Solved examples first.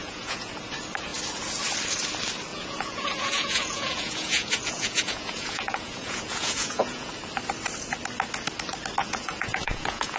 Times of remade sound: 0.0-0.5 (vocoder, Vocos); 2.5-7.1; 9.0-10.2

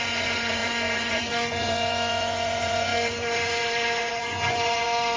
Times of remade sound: 0.0-5.2 (vocoder, Vocos)

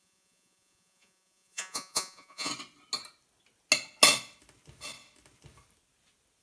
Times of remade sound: 0.0-2.5 (vocoder, Vocos)

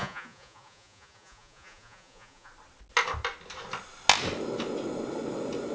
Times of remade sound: 0.0-2.5 (vocoder, Vocos)

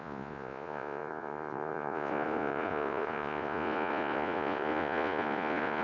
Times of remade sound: 0.0-5.8 (vocoder, Vocos)

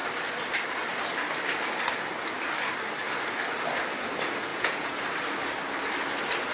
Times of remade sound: 4.5-5.0 (vocoder, Vocos)